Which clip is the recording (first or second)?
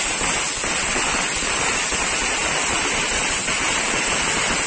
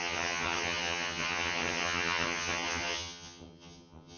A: first